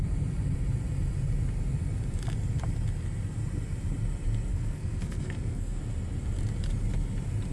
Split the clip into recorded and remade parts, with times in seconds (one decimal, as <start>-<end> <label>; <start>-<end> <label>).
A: 0.0-4.5 recorded; 4.5-5.8 remade; 5.8-7.5 recorded